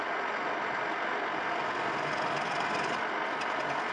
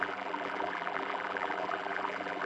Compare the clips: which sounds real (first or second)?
first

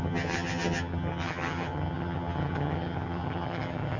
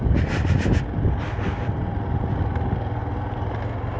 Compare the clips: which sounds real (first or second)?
second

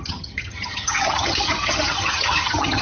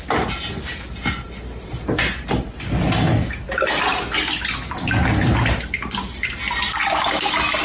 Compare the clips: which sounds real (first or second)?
second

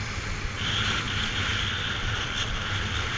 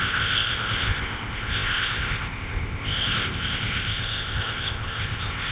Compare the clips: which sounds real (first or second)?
first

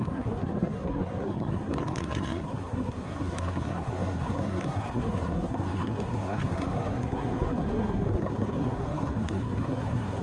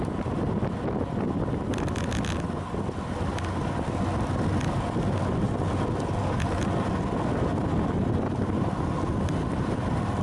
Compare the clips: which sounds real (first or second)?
second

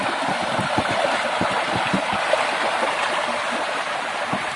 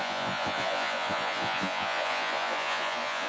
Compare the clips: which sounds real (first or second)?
first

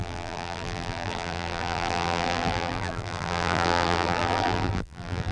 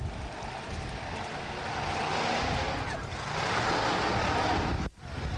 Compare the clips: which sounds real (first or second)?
second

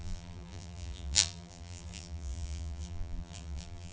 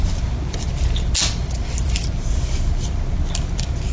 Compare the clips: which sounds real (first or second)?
second